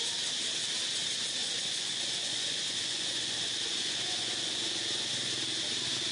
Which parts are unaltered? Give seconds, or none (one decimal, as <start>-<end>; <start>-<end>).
0.0-1.4; 5.1-6.1